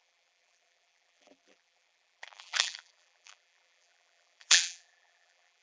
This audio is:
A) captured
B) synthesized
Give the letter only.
B